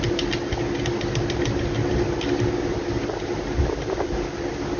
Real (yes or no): yes